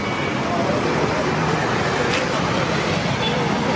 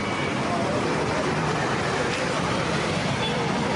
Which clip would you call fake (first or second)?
second